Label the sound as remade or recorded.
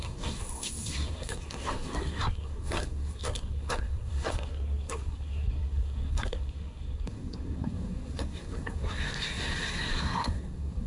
remade